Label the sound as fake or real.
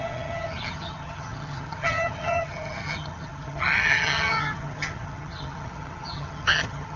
fake